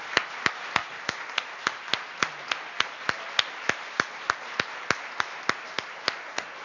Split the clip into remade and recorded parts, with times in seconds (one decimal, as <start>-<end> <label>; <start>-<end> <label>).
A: 0.0-6.6 recorded